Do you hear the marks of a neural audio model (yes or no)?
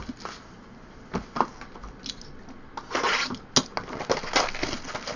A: no